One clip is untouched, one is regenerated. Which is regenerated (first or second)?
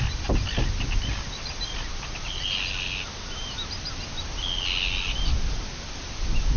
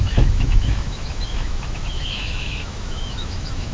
second